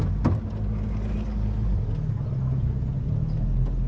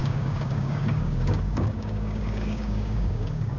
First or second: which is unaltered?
first